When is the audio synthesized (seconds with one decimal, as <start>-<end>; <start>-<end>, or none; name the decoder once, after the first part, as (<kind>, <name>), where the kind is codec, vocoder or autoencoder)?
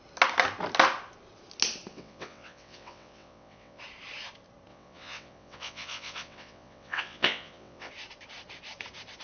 1.9-3.8 (vocoder, WaveNeXt); 4.7-7.9